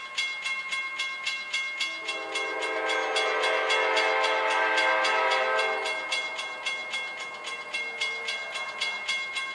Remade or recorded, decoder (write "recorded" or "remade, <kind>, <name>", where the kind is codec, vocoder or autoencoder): recorded